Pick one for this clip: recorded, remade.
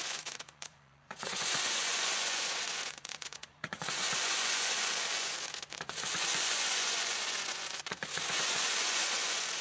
remade